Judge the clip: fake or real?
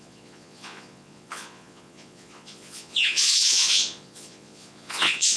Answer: fake